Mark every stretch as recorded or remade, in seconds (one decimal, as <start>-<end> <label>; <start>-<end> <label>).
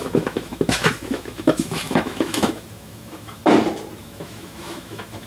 0.0-3.4 remade; 3.4-4.0 recorded; 4.0-5.3 remade